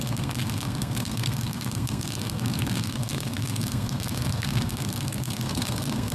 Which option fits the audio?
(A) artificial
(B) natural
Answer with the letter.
A